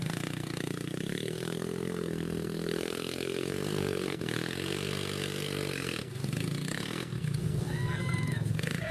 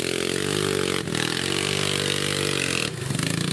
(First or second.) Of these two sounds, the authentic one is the second